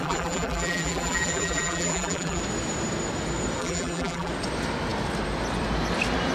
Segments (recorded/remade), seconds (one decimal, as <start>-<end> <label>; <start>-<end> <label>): 0.0-2.4 remade; 2.4-3.6 recorded; 3.6-4.3 remade; 4.3-6.3 recorded